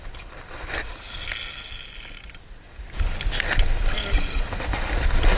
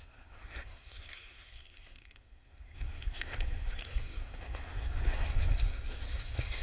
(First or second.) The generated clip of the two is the second